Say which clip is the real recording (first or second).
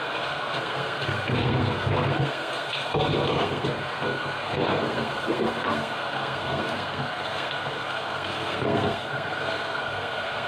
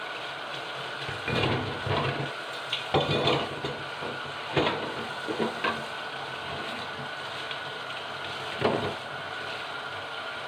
second